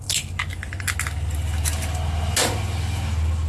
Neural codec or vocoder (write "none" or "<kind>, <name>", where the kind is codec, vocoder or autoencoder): none